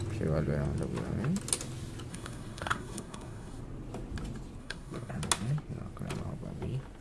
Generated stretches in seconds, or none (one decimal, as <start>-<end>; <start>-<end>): 2.1-3.6; 4.6-5.1